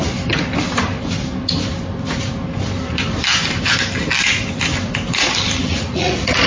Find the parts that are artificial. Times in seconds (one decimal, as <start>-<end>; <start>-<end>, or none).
5.6-6.5